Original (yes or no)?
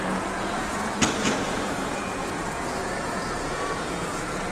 no